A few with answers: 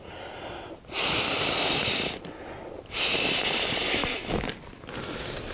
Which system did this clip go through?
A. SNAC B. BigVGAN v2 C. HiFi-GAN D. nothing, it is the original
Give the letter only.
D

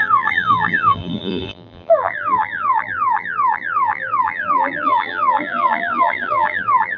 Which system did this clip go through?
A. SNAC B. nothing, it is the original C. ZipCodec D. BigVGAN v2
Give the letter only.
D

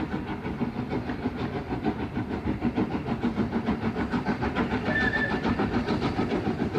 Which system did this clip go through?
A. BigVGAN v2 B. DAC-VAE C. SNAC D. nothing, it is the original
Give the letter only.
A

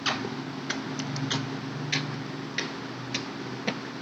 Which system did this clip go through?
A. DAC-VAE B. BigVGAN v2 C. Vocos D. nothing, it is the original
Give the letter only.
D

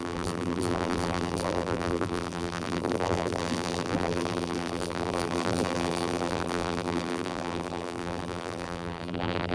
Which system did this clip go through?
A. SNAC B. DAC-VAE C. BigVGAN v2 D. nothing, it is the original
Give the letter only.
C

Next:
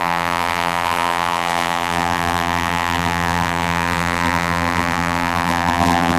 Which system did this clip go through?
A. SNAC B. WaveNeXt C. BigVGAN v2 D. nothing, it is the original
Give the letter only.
C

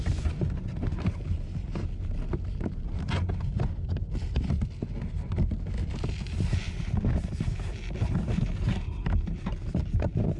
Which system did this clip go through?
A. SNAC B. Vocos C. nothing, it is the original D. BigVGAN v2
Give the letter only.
C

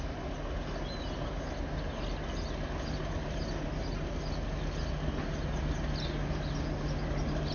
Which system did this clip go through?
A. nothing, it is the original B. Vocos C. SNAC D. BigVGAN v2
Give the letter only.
A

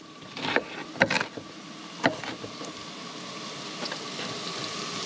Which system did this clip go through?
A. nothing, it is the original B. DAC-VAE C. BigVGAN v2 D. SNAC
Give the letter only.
A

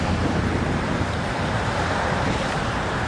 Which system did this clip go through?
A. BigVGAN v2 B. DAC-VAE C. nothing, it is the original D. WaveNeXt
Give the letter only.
A